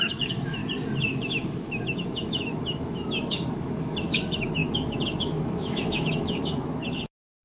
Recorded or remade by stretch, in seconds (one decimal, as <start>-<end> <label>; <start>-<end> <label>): 0.0-0.6 remade; 0.6-1.2 recorded; 1.2-7.4 remade